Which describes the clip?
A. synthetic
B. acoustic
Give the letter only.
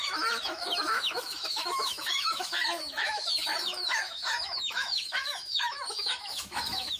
A